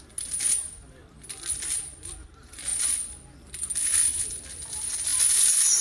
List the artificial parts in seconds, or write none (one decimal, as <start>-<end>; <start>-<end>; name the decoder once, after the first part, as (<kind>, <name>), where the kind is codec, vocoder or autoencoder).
none